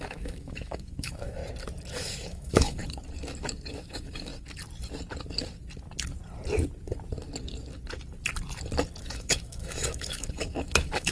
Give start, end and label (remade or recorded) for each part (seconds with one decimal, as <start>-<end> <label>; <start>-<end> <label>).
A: 0.0-1.4 remade; 1.4-1.9 recorded; 1.9-2.8 remade; 2.8-3.7 recorded; 3.7-4.3 remade; 4.3-9.0 recorded; 9.0-11.1 remade